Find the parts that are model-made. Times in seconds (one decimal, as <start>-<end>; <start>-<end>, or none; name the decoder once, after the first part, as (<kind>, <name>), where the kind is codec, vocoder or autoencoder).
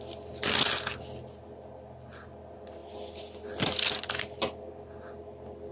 none